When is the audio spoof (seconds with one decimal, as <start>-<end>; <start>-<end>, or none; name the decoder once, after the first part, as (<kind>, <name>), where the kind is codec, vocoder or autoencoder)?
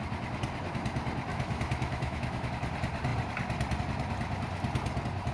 1.3-2.5 (autoencoder, DAC-VAE)